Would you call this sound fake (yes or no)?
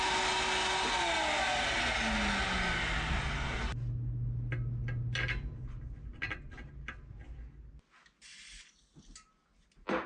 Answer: no